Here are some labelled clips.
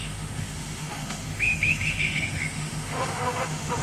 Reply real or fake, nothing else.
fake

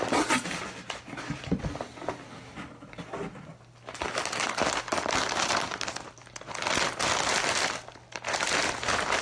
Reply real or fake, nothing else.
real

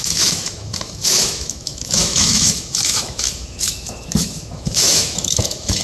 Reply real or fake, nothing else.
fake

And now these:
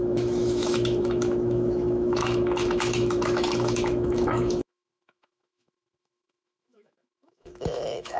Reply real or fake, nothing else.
fake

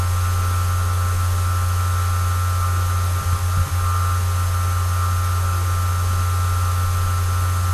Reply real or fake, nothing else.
real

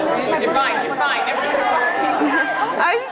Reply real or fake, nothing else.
real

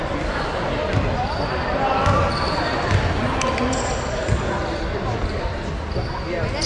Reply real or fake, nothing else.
real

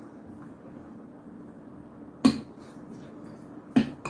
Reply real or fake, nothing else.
real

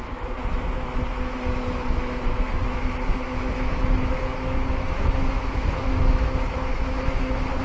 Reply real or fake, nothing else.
fake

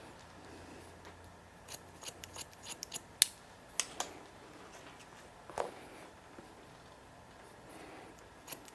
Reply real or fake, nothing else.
real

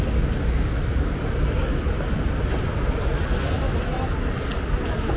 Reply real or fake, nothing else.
real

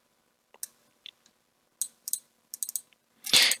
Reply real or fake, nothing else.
real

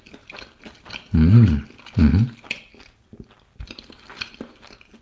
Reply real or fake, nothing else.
real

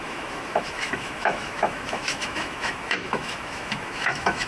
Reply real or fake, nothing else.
fake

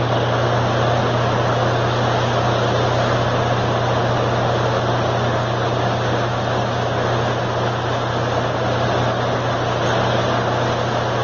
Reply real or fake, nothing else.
real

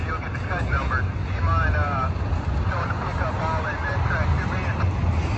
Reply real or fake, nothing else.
real